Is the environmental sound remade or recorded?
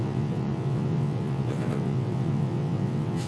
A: remade